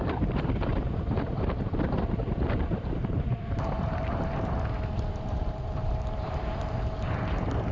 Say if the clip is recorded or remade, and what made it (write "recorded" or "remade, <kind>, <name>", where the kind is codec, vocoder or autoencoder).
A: remade, vocoder, BigVGAN v2